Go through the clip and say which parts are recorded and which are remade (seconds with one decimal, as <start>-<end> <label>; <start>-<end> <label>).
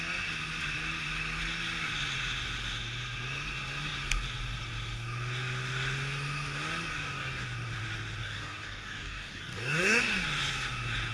0.0-6.9 recorded; 6.9-7.4 remade; 7.4-8.2 recorded; 8.2-10.0 remade; 10.0-11.1 recorded